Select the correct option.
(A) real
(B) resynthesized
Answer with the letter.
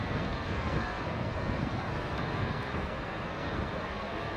B